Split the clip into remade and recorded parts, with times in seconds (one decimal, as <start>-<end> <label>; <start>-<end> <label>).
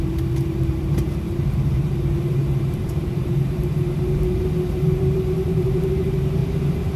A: 0.0-6.4 remade; 6.4-7.0 recorded